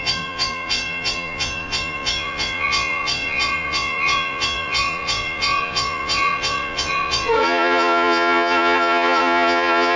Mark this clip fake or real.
fake